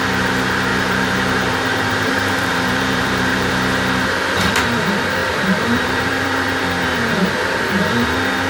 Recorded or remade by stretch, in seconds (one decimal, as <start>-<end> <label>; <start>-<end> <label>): 0.0-0.7 recorded; 0.7-3.5 remade; 3.5-5.2 recorded; 5.2-6.6 remade; 6.6-8.5 recorded

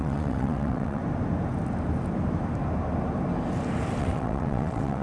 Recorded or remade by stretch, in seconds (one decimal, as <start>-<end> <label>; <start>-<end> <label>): 0.0-1.0 remade; 1.0-4.0 recorded; 4.0-5.0 remade

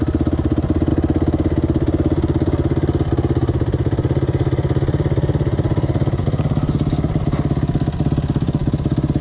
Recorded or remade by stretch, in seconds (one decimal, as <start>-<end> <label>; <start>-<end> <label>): 0.0-9.2 recorded

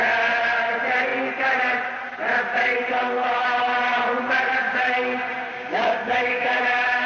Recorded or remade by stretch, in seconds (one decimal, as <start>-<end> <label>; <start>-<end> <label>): 0.0-5.5 recorded; 5.5-6.6 remade; 6.6-7.1 recorded

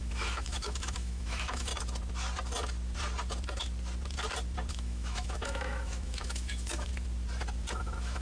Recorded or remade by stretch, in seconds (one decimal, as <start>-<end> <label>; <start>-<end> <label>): 0.0-1.7 remade; 1.7-4.7 recorded; 4.7-6.9 remade; 6.9-7.7 recorded; 7.7-8.2 remade

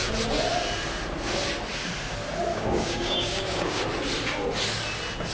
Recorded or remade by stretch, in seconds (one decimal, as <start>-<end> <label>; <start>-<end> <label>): 0.0-2.5 recorded; 2.5-3.8 remade; 3.8-5.3 recorded

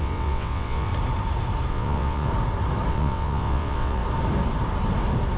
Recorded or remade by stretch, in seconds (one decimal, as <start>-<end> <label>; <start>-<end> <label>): 0.0-0.9 remade; 0.9-1.7 recorded; 1.7-2.3 remade; 2.3-2.9 recorded; 2.9-4.0 remade; 4.0-5.4 recorded